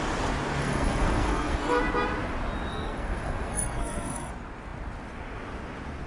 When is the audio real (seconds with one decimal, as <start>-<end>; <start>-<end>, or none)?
0.0-0.6; 1.8-2.7; 4.3-6.1